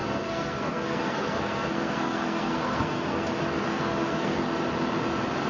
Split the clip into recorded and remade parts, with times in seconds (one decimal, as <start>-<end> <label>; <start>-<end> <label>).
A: 0.0-3.3 remade; 3.3-3.7 recorded; 3.7-4.4 remade; 4.4-5.5 recorded